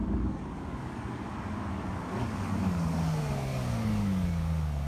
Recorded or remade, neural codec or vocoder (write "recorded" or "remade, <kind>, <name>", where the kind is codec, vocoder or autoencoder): remade, codec, DAC